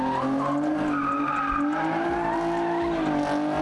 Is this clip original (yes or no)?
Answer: yes